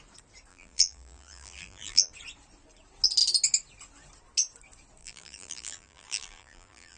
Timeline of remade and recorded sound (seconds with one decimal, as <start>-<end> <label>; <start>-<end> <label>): 0.0-0.5 recorded; 0.5-2.1 remade; 2.1-5.0 recorded; 5.0-7.0 remade